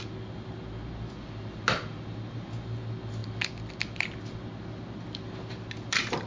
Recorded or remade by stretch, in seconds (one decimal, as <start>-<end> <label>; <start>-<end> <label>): 0.0-6.3 recorded